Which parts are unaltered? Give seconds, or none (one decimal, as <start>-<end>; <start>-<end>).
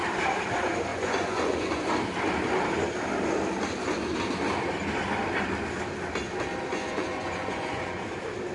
0.0-0.9; 1.8-6.7; 8.0-8.5